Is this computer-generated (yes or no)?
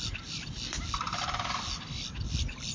yes